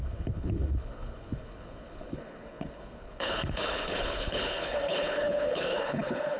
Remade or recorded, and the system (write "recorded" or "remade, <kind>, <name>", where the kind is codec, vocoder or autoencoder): remade, codec, HILCodec